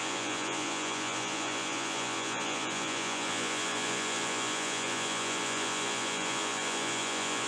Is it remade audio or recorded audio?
remade